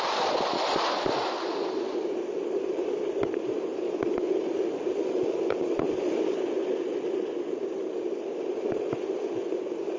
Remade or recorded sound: recorded